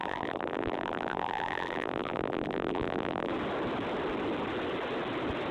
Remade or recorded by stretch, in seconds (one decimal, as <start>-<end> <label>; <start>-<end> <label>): 0.0-3.3 remade; 3.3-5.5 recorded